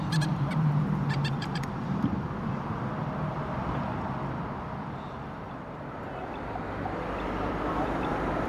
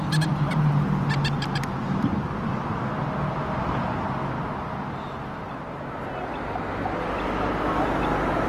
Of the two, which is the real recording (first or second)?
second